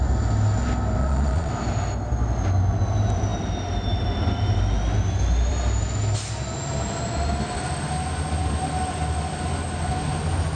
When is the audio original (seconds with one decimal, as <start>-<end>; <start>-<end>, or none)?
0.0-1.0; 1.5-10.6